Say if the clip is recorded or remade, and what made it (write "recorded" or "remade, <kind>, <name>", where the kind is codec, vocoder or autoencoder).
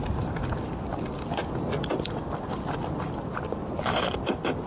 recorded